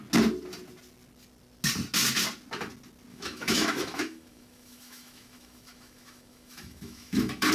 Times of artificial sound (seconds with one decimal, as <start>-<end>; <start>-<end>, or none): 3.1-7.5